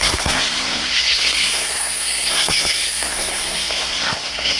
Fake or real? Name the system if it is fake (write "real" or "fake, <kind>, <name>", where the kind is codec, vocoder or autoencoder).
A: fake, codec, SNAC